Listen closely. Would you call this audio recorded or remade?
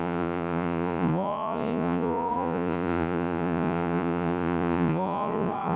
remade